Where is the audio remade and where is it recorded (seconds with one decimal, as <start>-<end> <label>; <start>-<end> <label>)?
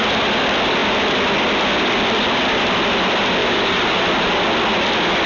0.0-3.4 recorded; 3.4-4.1 remade; 4.1-5.3 recorded